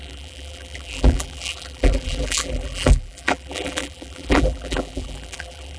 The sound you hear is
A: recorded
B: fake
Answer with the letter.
B